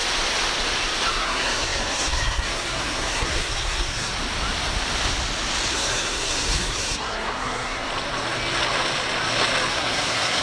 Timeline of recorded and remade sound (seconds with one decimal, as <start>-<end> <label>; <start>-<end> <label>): 0.0-1.1 recorded; 1.1-4.1 remade; 4.1-5.7 recorded; 5.7-7.9 remade; 7.9-9.7 recorded; 9.7-10.4 remade